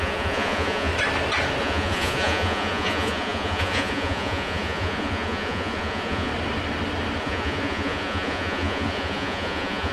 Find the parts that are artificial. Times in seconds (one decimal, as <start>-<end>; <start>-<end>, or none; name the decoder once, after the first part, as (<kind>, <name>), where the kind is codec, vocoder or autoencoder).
0.0-0.9 (vocoder, Vocos); 1.6-6.3; 7.2-9.9